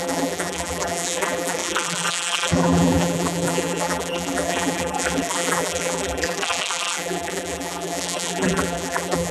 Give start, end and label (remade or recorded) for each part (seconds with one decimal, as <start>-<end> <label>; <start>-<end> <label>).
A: 0.0-9.3 remade